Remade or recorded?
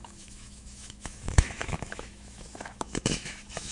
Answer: remade